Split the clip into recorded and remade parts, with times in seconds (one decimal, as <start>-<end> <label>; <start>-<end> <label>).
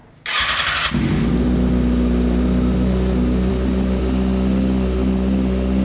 0.0-5.8 recorded